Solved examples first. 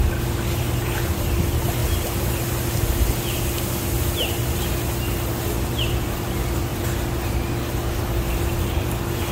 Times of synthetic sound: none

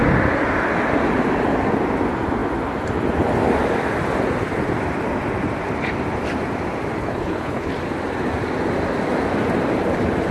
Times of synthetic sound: 7.0-7.7

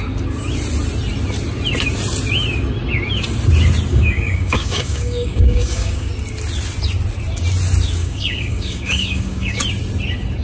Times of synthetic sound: 3.9-6.1; 8.0-9.6